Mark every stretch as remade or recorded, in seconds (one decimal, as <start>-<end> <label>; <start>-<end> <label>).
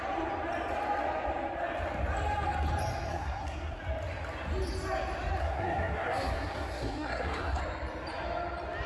0.0-3.1 recorded; 3.1-3.8 remade; 3.8-5.4 recorded; 5.4-7.6 remade; 7.6-8.9 recorded